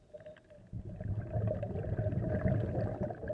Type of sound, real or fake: real